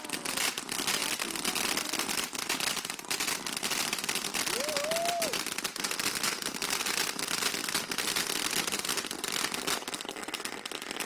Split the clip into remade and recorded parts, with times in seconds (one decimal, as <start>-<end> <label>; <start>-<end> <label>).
0.0-11.1 recorded